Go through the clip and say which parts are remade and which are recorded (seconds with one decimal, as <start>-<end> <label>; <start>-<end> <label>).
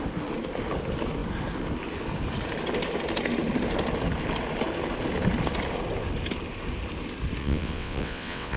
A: 0.0-7.4 recorded; 7.4-8.6 remade